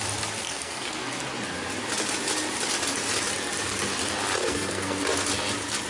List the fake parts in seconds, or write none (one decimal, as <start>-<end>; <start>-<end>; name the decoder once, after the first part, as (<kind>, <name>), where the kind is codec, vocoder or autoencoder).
0.4-1.2 (codec, SNAC); 4.4-5.0